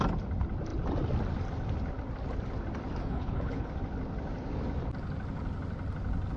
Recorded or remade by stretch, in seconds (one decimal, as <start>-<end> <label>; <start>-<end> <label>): 0.0-3.0 recorded; 3.0-3.7 remade; 3.7-6.4 recorded